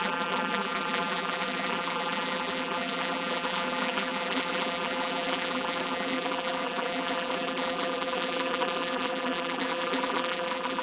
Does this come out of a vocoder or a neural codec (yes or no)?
yes